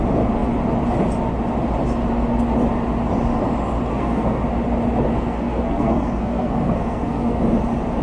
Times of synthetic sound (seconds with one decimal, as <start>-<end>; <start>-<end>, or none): 3.9-4.4; 5.1-7.4